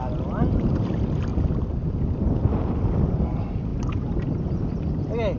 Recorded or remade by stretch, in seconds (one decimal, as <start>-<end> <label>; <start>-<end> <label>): 0.0-5.4 recorded